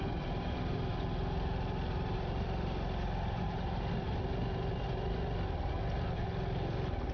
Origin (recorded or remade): recorded